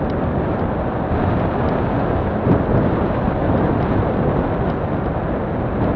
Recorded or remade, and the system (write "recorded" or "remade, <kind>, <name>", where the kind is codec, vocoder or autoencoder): recorded